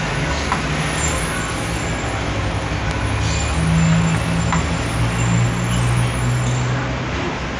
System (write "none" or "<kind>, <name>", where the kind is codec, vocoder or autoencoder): none